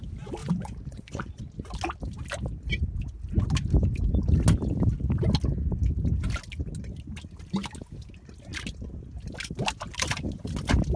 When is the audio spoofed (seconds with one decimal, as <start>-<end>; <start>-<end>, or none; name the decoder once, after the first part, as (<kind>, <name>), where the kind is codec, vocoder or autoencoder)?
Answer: 0.4-1.4 (vocoder, Vocos)